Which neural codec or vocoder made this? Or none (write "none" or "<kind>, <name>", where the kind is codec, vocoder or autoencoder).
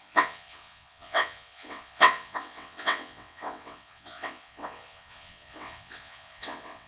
vocoder, WaveNeXt